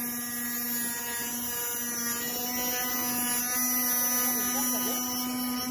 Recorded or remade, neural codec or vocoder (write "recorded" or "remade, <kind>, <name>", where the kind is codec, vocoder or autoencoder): recorded